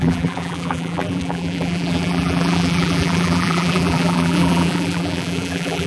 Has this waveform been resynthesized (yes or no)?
yes